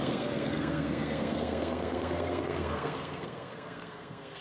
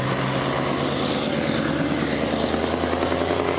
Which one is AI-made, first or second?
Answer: first